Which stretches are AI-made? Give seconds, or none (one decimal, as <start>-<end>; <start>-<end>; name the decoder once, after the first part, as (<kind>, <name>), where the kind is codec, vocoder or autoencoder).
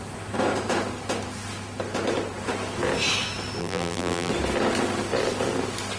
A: 3.6-4.3 (vocoder, BigVGAN v2)